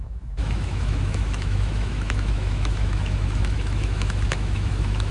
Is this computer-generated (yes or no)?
yes